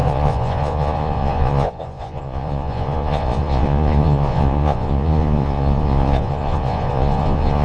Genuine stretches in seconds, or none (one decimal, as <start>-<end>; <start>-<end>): none